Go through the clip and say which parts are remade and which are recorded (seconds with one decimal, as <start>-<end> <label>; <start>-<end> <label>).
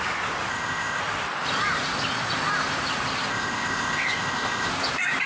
0.0-0.5 recorded; 0.5-1.0 remade; 1.0-3.3 recorded; 3.3-4.7 remade; 4.7-5.3 recorded